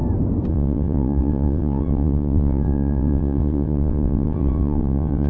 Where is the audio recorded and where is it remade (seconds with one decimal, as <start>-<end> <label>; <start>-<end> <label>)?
0.0-0.5 recorded; 0.5-5.3 remade